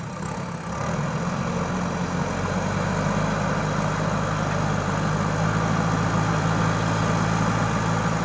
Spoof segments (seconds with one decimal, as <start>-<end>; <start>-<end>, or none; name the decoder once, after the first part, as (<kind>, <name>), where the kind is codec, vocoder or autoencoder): 0.8-1.4 (vocoder, BigVGAN v2); 6.3-7.6